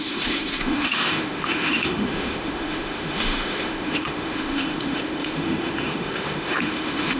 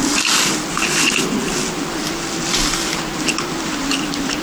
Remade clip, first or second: first